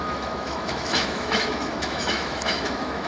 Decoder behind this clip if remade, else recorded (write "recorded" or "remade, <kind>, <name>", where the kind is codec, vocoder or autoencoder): remade, autoencoder, DAC-VAE